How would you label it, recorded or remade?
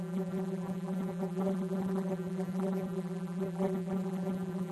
remade